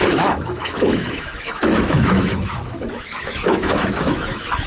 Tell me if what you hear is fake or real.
fake